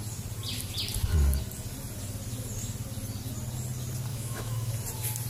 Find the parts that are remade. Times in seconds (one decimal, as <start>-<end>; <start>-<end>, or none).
4.1-4.7